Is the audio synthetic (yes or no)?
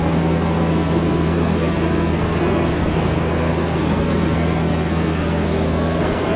yes